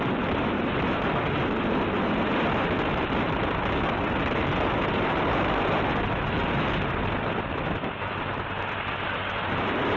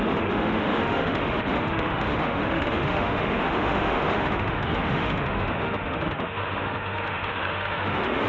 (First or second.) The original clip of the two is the first